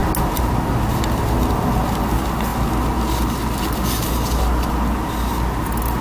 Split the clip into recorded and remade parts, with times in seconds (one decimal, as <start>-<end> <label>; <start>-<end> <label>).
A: 0.0-6.0 recorded